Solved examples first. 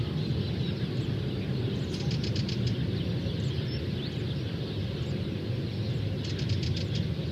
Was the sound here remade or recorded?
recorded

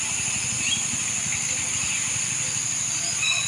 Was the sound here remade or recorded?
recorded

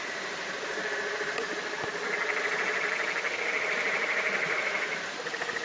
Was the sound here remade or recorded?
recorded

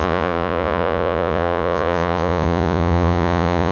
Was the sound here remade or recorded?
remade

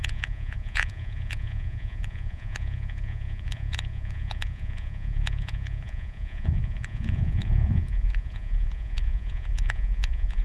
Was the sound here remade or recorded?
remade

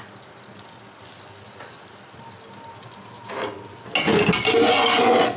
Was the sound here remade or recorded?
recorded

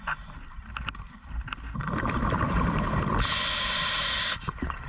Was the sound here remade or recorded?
recorded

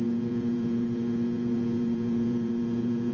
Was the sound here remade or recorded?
remade